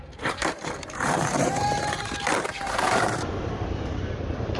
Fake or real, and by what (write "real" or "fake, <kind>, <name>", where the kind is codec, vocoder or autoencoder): fake, vocoder, BigVGAN v2